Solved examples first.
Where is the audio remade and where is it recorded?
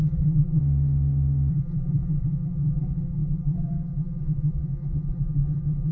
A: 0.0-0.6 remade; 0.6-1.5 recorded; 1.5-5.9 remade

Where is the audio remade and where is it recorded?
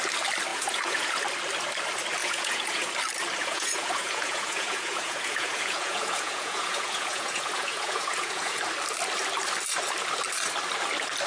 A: 0.0-0.5 recorded; 0.5-1.2 remade; 1.2-2.2 recorded; 2.2-2.9 remade; 2.9-3.4 recorded; 3.4-8.6 remade; 8.6-11.3 recorded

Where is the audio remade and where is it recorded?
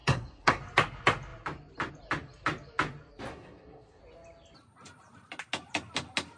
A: 0.0-0.6 remade; 0.6-3.3 recorded; 3.3-4.0 remade; 4.0-6.4 recorded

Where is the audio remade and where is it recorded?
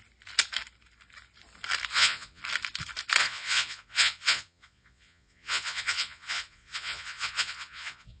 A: 0.0-1.9 recorded; 1.9-2.4 remade; 2.4-3.2 recorded; 3.2-8.2 remade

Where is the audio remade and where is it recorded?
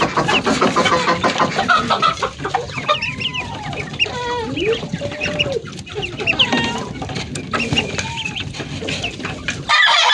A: 0.0-10.1 recorded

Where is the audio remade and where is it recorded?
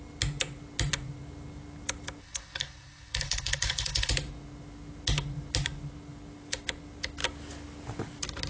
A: 0.0-2.2 recorded; 2.2-4.1 remade; 4.1-8.5 recorded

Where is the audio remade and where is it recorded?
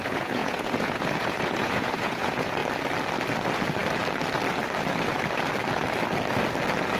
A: 0.0-2.6 remade; 2.6-7.0 recorded